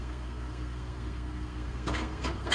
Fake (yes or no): yes